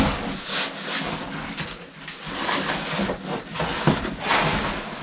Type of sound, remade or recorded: recorded